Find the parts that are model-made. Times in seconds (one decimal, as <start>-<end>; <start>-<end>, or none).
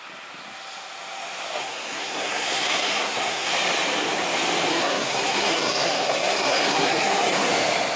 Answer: 1.6-3.5; 4.7-7.5